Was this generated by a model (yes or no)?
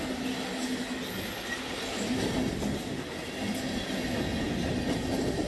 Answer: no